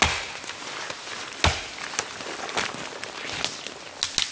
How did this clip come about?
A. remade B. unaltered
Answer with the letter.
B